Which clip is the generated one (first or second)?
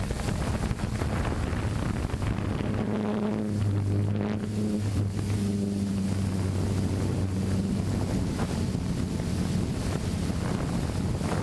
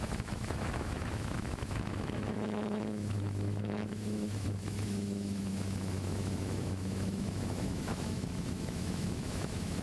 second